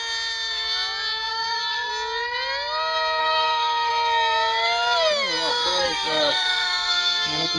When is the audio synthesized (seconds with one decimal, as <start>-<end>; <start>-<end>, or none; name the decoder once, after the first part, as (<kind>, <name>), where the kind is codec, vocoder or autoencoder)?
1.3-1.9 (codec, SNAC); 3.2-3.9; 5.5-7.6